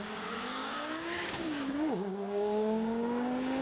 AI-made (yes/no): yes